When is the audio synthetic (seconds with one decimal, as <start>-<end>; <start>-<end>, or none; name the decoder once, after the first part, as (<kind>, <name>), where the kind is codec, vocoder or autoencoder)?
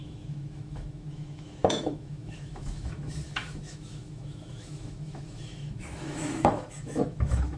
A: 0.0-7.6 (autoencoder, DAC-VAE)